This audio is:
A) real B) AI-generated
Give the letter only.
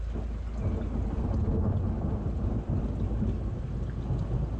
A